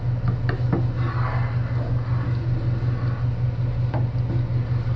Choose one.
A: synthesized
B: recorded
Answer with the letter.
B